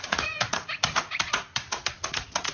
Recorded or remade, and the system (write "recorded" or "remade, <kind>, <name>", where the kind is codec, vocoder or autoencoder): remade, vocoder, Vocos